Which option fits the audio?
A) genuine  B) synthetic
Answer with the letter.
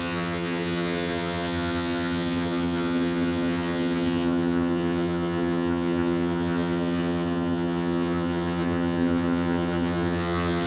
B